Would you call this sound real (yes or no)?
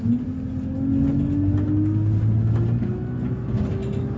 yes